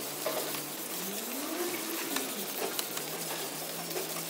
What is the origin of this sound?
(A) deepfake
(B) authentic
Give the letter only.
B